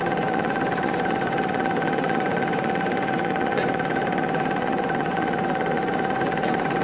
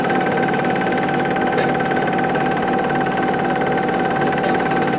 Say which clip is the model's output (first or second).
first